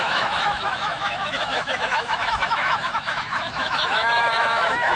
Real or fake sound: fake